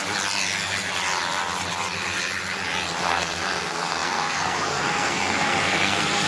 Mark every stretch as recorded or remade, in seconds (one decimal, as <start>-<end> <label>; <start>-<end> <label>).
0.0-3.0 recorded; 3.0-6.3 remade